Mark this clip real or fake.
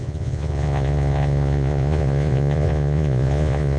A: fake